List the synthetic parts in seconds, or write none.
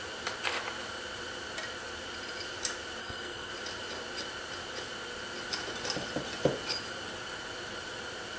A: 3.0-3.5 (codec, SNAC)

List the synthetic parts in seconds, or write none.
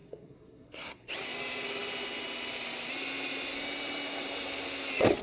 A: 0.0-1.1 (codec, SNAC)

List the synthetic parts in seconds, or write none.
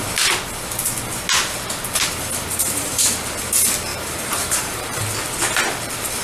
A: 2.5-3.1 (vocoder, BigVGAN v2); 3.9-5.0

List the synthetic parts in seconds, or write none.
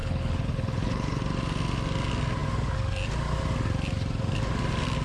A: 0.0-1.2 (codec, HILCodec)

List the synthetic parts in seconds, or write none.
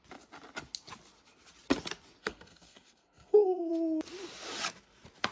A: 2.2-3.7 (codec, SNAC)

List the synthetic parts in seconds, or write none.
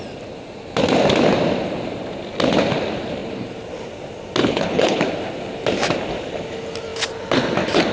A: 4.4-5.0 (codec, HILCodec)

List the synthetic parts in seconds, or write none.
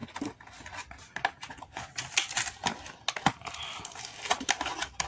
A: 1.5-1.9 (vocoder, Vocos)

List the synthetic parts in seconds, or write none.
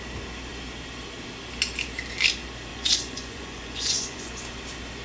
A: 2.7-4.3 (vocoder, Vocos)